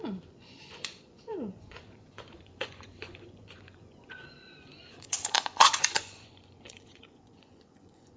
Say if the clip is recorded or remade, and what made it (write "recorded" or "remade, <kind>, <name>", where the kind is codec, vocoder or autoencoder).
remade, vocoder, Vocos